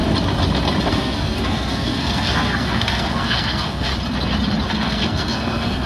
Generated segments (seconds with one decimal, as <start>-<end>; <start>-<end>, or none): 0.9-3.9; 4.7-5.9